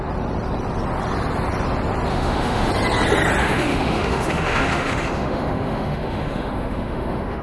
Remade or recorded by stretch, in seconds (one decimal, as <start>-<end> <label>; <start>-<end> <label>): 0.0-2.1 recorded; 2.1-2.7 remade; 2.7-3.4 recorded; 3.4-7.4 remade